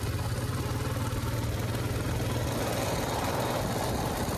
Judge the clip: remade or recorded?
recorded